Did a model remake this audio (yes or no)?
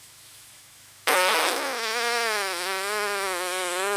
yes